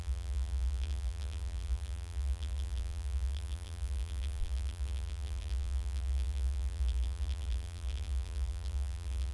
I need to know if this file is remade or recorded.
remade